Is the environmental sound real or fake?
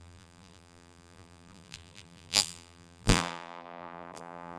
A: fake